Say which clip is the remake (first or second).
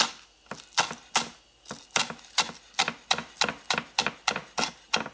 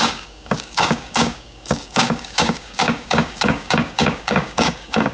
second